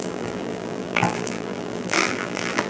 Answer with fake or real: fake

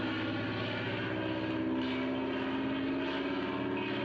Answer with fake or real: real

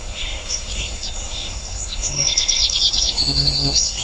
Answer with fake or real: fake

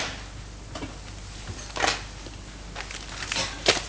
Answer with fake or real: real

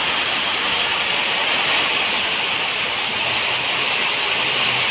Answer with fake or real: real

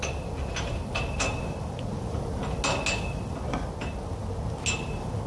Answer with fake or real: real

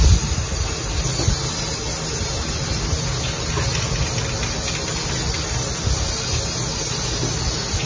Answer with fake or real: real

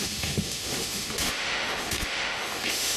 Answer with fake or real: fake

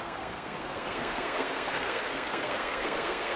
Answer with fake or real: fake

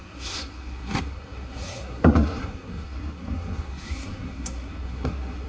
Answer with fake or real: fake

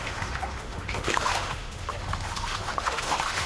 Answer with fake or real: fake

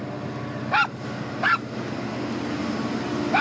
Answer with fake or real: real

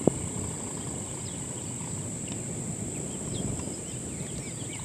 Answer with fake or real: real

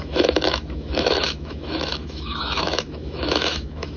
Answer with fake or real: fake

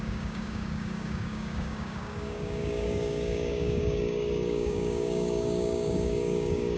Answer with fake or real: fake